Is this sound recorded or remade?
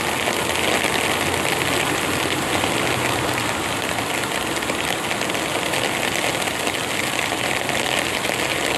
recorded